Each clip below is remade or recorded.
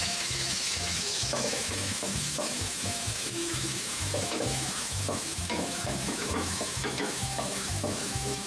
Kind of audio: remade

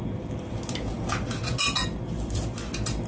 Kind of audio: recorded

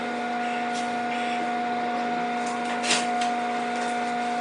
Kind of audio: recorded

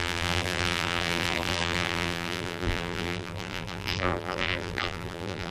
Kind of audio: remade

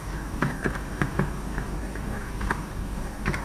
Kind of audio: remade